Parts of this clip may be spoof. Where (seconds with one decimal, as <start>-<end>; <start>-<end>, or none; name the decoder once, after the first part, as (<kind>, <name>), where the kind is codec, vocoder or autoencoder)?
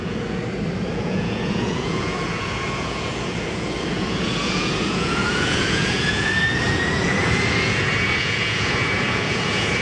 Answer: 0.0-0.4 (vocoder, Vocos); 0.9-9.8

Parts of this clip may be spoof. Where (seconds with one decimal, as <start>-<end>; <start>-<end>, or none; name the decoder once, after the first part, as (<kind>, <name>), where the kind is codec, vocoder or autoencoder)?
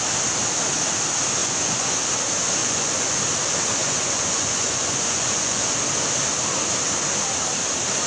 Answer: 1.4-2.0 (vocoder, Vocos); 2.6-3.2; 3.8-5.7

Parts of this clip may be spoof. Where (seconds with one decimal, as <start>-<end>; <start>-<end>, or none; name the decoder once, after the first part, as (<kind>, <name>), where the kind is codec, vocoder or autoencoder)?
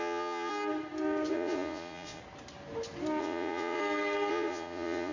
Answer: 0.0-0.5 (vocoder, Vocos); 1.3-2.2; 3.2-3.8; 4.3-5.1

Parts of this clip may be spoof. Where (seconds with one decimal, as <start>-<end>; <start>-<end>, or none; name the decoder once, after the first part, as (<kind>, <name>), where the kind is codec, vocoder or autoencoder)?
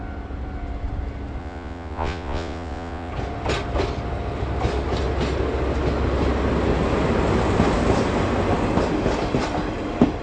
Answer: 1.4-3.1 (vocoder, Vocos)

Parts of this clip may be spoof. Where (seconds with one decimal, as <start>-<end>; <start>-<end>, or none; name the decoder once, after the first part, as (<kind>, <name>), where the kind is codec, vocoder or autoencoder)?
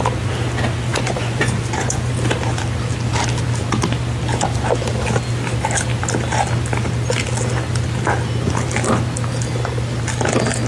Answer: 0.9-2.1 (vocoder, Vocos)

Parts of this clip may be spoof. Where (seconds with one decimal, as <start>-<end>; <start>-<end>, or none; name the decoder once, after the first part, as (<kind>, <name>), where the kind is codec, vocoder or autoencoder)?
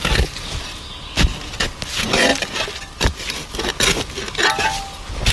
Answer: none